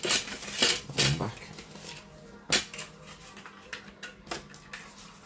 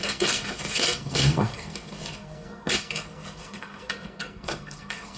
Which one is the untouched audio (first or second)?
first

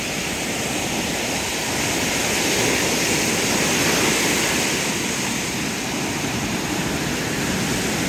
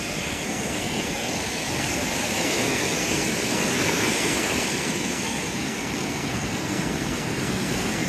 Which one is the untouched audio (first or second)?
first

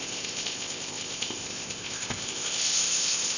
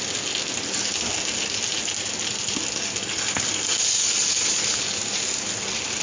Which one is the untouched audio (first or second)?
second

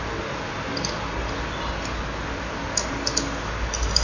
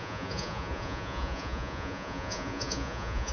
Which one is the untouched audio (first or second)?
first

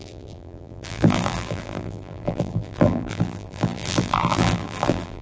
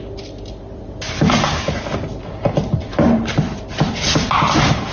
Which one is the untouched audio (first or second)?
second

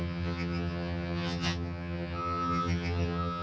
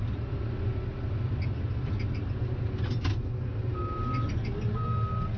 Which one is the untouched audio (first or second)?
second